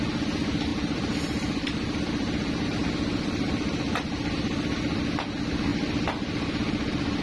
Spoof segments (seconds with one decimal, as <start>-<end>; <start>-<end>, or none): 0.7-5.0; 5.7-7.2